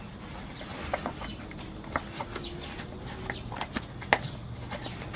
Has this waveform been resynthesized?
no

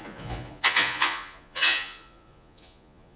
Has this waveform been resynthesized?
yes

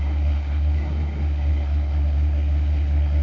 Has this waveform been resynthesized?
yes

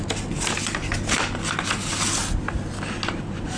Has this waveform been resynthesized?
no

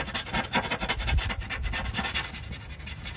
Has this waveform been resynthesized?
yes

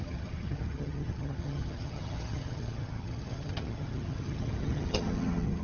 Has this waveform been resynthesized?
yes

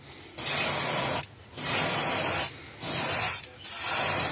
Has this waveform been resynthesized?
no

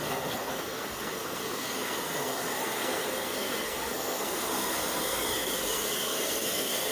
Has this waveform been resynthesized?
yes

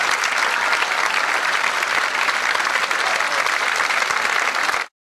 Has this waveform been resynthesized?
no